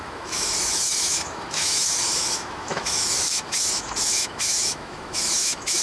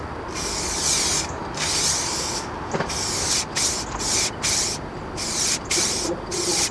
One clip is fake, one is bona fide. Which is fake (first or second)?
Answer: first